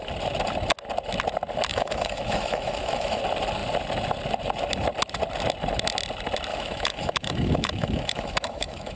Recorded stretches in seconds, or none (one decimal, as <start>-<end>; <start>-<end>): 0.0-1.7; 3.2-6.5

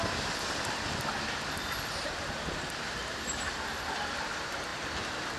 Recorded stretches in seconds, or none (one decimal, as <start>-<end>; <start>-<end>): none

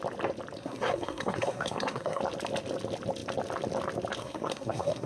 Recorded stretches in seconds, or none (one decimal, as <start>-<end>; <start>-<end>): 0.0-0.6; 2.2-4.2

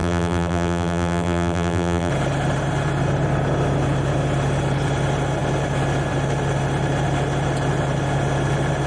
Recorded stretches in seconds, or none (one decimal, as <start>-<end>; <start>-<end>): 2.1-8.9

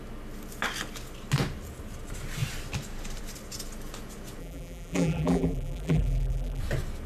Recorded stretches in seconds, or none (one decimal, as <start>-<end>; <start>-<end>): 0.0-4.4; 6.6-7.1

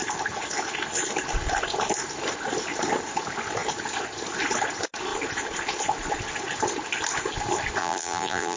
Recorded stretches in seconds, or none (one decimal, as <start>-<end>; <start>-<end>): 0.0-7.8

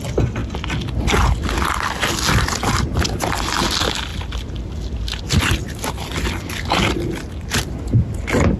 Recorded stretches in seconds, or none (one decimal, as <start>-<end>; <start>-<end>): 0.0-8.6